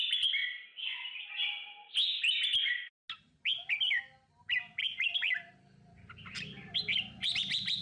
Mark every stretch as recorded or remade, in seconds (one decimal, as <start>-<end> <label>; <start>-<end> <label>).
0.0-0.4 recorded; 0.4-1.3 remade; 1.3-4.8 recorded; 4.8-7.8 remade